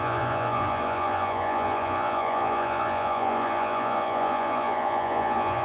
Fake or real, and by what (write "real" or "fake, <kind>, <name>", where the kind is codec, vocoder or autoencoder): fake, vocoder, Vocos